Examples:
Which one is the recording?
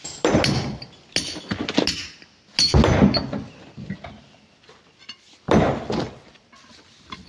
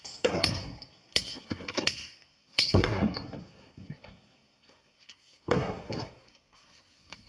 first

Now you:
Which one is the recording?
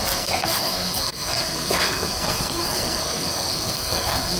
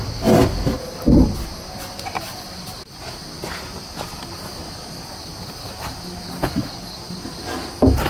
second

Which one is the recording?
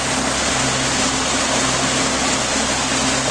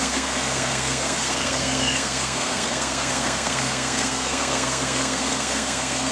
first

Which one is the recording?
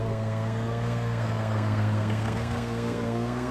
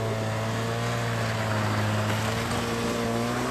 second